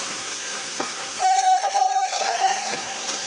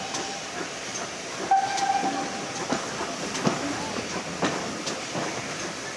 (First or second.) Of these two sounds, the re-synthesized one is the first